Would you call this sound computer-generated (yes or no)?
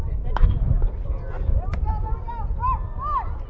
no